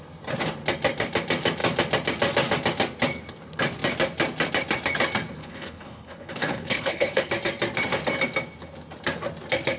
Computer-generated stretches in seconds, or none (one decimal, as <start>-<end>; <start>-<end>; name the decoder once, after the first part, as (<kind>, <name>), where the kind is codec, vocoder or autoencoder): 5.4-7.3 (codec, HILCodec)